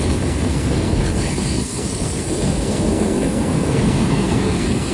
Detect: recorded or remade remade